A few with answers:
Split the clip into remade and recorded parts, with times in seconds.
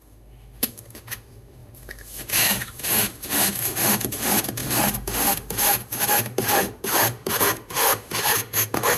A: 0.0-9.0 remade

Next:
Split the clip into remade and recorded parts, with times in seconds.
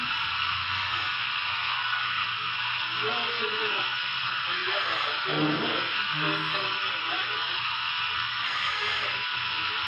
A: 0.0-9.9 remade